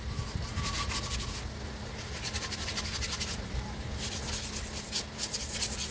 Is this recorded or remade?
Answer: recorded